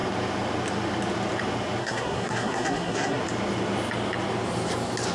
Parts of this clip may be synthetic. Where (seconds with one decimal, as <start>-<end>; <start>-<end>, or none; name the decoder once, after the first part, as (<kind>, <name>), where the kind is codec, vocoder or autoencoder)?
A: 1.8-3.2 (codec, SNAC)